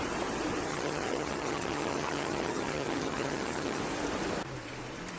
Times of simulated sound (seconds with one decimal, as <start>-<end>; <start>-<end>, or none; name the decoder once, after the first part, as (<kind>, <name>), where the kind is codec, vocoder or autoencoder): 0.7-3.8 (vocoder, HiFi-GAN)